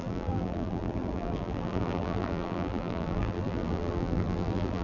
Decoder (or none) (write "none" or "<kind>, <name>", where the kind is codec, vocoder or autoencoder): vocoder, BigVGAN v2